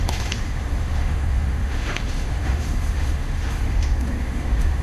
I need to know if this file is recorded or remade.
remade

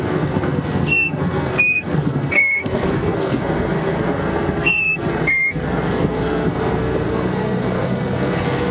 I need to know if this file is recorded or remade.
remade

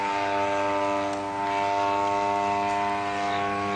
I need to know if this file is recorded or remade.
recorded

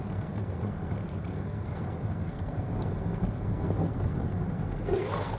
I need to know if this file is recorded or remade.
remade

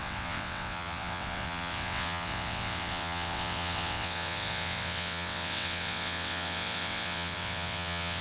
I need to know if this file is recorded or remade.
remade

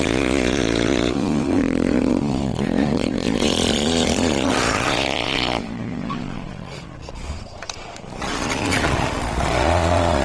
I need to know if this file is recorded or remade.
remade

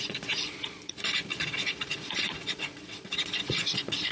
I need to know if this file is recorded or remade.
remade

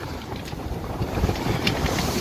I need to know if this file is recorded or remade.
remade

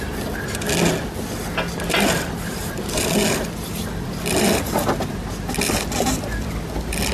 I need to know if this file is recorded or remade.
recorded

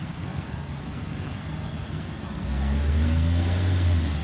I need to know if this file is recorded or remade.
remade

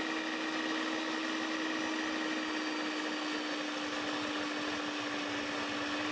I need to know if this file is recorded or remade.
recorded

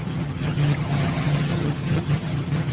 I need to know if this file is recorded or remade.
remade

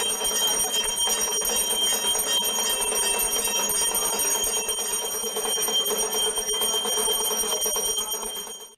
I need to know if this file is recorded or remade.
recorded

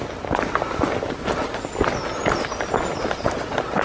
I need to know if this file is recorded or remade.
recorded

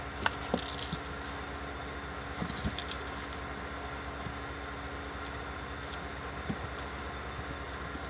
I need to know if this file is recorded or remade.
recorded